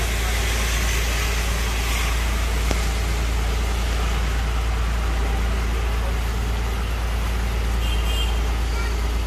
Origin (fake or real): real